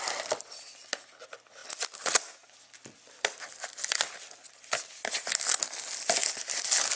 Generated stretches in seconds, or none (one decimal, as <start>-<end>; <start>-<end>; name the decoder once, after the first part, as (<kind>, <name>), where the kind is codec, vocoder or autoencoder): none